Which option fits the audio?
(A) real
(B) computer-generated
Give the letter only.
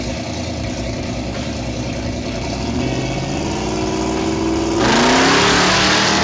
A